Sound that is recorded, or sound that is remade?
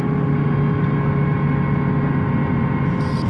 recorded